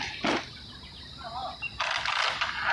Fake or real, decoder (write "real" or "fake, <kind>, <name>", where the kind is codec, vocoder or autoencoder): real